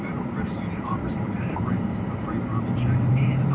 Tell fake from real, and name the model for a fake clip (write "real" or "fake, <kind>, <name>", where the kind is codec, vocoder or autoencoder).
fake, vocoder, BigVGAN v2